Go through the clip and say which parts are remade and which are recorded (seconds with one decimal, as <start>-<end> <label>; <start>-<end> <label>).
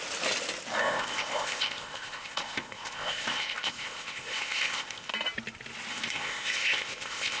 0.0-0.8 recorded; 0.8-5.1 remade; 5.1-5.9 recorded; 5.9-7.4 remade